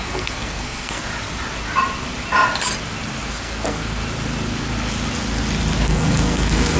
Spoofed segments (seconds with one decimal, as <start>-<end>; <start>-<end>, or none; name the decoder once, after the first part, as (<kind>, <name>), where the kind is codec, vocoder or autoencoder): 0.0-1.1 (codec, SNAC); 3.3-4.0; 5.8-6.8